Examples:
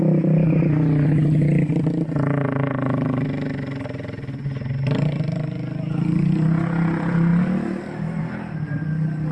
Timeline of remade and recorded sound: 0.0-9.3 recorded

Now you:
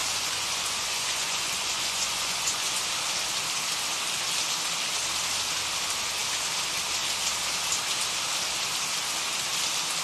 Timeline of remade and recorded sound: 0.0-2.8 remade; 2.8-10.0 recorded

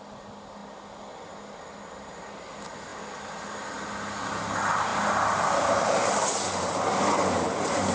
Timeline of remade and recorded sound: 0.0-7.9 recorded

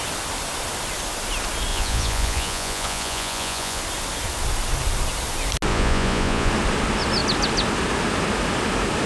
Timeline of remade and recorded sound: 0.0-1.7 recorded; 1.7-3.8 remade; 3.8-5.7 recorded; 5.7-6.5 remade; 6.5-9.1 recorded